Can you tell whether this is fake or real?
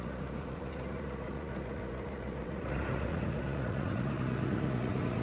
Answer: fake